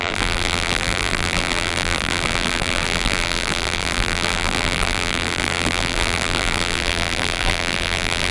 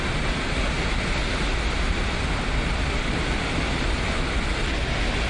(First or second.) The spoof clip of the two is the first